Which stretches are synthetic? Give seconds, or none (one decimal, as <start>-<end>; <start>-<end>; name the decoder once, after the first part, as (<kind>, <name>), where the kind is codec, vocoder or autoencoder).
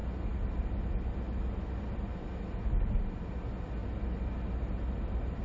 none